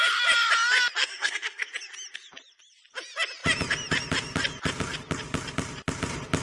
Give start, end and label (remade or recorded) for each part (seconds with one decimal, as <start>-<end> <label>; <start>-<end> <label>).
0.0-1.0 recorded; 1.0-1.7 remade; 1.7-6.4 recorded